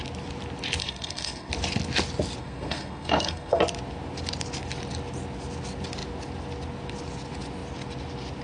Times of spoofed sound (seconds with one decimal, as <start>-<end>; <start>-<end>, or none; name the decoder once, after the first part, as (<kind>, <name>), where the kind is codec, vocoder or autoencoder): 0.8-1.5 (codec, SNAC); 2.4-3.6